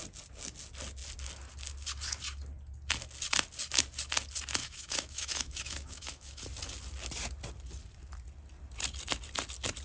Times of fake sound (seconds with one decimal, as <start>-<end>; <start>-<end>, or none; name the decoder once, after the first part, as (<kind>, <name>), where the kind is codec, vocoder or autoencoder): 4.6-6.4 (autoencoder, DAC-VAE)